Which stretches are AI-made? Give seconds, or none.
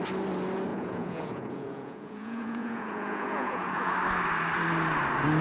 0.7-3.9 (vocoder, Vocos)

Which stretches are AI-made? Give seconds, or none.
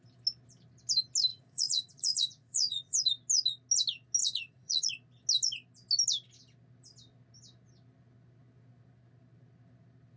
1.3-3.0 (vocoder, Vocos); 4.2-4.9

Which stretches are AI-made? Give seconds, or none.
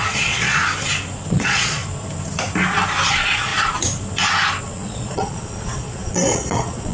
0.0-0.6 (vocoder, Vocos); 1.3-1.8; 3.1-3.5; 4.6-6.9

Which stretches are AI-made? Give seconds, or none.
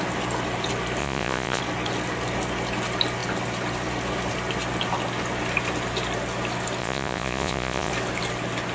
1.0-1.6 (vocoder, Vocos); 6.8-7.9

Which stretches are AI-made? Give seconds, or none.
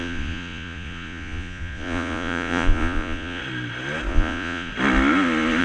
0.0-3.4 (vocoder, Vocos); 4.1-4.7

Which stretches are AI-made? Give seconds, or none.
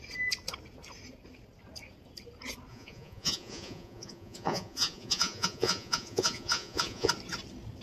2.7-7.1 (vocoder, Vocos)